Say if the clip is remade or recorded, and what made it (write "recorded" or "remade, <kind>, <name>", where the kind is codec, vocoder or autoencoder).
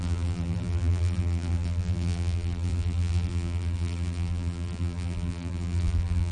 remade, vocoder, BigVGAN v2